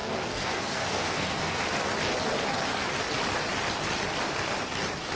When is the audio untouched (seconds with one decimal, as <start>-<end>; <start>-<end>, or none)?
1.6-5.1